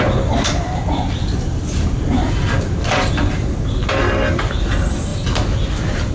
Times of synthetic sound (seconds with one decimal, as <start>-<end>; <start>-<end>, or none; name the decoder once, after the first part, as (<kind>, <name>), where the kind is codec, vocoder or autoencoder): none